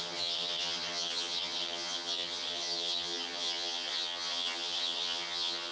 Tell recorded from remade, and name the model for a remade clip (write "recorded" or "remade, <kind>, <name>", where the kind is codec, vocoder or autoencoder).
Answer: remade, vocoder, HiFi-GAN